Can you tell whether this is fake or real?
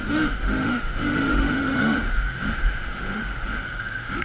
fake